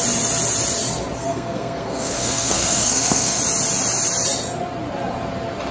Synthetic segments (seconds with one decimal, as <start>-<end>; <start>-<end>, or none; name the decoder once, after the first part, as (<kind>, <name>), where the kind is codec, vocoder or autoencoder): 1.2-3.4 (codec, SNAC)